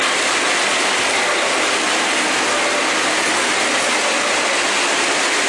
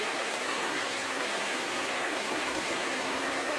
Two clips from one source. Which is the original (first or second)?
first